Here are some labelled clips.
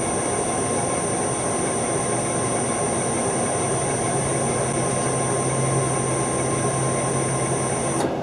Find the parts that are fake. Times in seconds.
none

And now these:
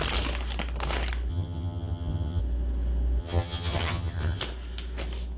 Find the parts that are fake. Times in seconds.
1.3-2.4; 3.2-4.4

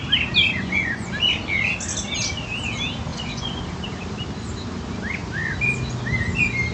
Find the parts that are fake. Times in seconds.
0.4-1.1; 3.1-3.6